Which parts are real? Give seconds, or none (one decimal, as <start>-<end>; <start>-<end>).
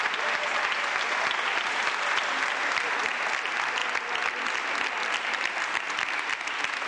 0.0-6.9